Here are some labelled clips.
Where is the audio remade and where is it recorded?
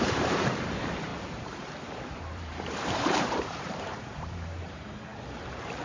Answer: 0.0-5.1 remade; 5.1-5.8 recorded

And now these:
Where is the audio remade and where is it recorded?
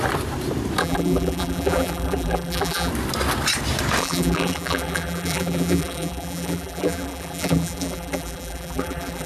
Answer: 0.0-0.8 recorded; 0.8-2.9 remade; 2.9-4.0 recorded; 4.0-9.3 remade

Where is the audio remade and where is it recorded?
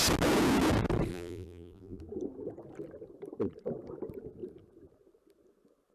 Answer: 0.0-1.1 recorded; 1.1-2.0 remade; 2.0-5.9 recorded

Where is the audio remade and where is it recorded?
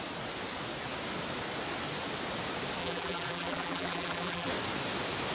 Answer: 0.0-2.8 recorded; 2.8-4.5 remade; 4.5-5.3 recorded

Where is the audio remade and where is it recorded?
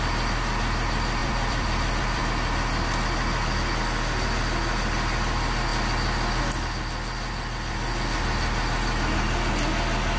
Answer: 0.0-1.2 recorded; 1.2-2.2 remade; 2.2-10.2 recorded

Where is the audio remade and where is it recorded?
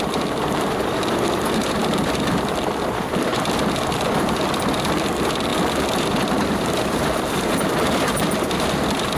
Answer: 0.0-9.2 remade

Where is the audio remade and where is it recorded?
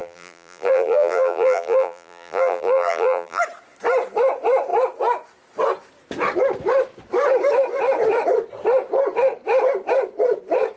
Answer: 0.0-3.4 remade; 3.4-10.8 recorded